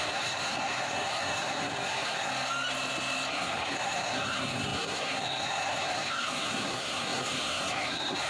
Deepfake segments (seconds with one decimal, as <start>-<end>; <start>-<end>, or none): 0.0-2.3; 3.3-8.3